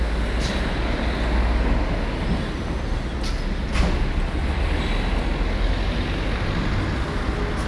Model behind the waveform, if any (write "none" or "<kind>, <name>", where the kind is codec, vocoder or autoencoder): none